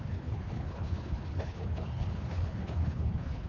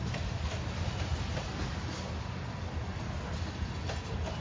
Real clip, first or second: second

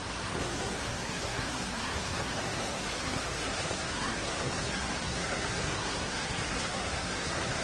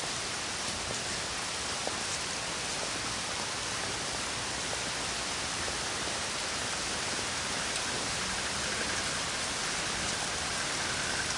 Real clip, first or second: second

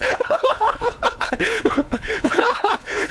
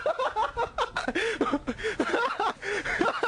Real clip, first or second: second